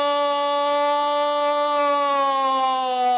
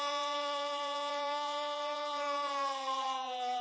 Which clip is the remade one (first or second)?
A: second